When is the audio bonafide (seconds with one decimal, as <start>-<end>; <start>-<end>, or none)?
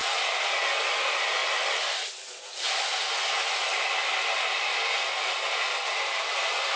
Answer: 0.0-6.8